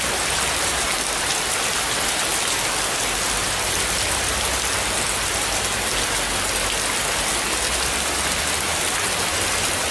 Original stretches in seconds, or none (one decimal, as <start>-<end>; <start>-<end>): 0.0-9.9